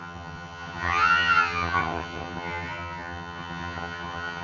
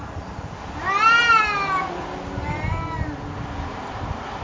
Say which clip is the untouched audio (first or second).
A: second